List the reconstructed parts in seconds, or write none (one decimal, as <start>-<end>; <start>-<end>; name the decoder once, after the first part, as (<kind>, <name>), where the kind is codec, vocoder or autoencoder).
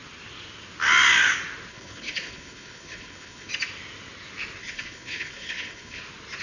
1.7-3.5 (codec, HILCodec); 4.6-6.0